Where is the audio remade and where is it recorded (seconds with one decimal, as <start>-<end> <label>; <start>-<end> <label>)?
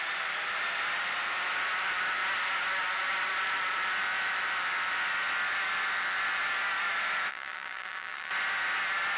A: 0.0-7.3 recorded; 7.3-8.3 remade; 8.3-9.2 recorded